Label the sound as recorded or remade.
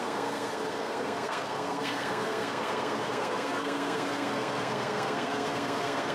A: remade